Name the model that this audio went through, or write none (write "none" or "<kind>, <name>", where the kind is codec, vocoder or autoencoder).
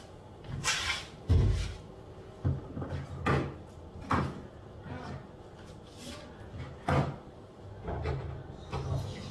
none